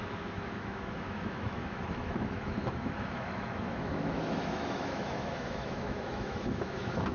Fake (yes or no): yes